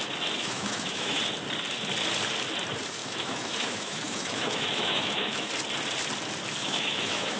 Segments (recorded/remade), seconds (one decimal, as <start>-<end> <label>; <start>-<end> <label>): 0.0-0.4 recorded; 0.4-1.2 remade; 1.2-3.0 recorded; 3.0-5.5 remade; 5.5-6.6 recorded; 6.6-7.4 remade